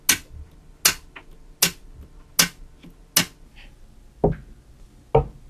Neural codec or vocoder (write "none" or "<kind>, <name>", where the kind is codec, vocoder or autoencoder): none